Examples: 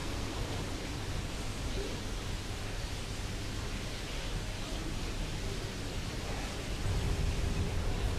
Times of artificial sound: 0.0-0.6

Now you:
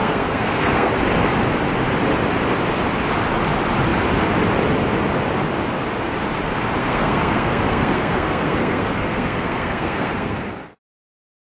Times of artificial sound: 0.0-0.9; 6.8-11.4